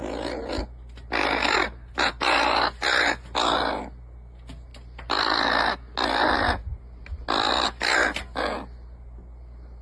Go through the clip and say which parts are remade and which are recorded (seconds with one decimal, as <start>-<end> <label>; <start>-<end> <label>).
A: 0.0-9.8 recorded